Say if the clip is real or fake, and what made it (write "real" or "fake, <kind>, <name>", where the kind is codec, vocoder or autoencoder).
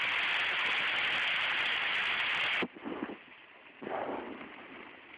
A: real